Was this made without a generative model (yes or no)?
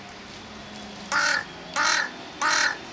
yes